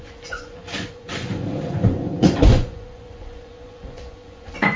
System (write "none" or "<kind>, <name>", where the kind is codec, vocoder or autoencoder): vocoder, Vocos